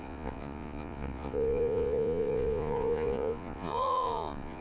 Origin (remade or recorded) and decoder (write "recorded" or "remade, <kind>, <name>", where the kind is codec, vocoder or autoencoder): remade, vocoder, Vocos